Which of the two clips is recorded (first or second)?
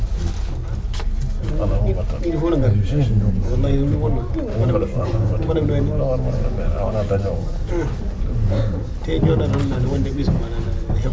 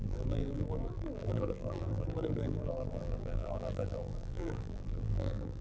first